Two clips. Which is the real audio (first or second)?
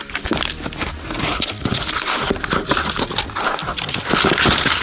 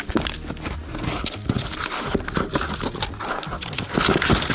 second